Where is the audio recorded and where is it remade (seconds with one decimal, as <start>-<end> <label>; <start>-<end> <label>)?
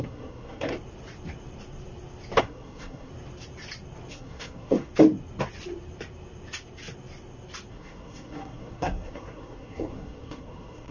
0.0-0.7 remade; 0.7-2.4 recorded; 2.4-3.1 remade; 3.1-4.1 recorded; 4.1-4.9 remade; 4.9-7.7 recorded; 7.7-10.9 remade